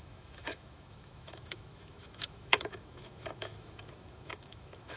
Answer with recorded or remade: remade